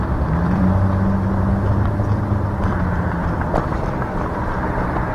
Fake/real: fake